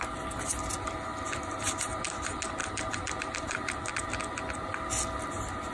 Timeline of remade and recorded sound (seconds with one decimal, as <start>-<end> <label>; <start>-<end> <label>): 0.0-2.6 recorded; 2.6-3.9 remade; 3.9-5.7 recorded